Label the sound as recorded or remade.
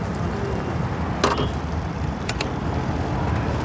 recorded